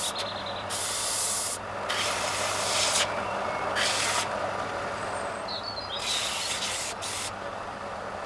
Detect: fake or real real